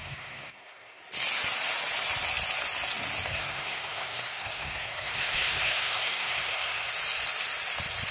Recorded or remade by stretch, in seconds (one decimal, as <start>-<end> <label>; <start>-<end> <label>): 0.0-1.0 remade; 1.0-3.3 recorded; 3.3-6.9 remade; 6.9-8.1 recorded